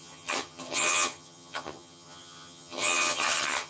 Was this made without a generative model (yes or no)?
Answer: no